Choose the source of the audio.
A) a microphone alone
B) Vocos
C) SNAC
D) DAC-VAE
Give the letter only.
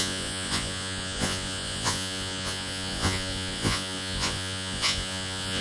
B